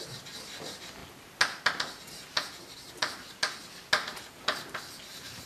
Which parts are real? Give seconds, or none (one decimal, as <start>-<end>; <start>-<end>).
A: 0.0-5.5